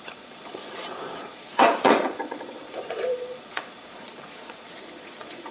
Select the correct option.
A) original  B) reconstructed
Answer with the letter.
B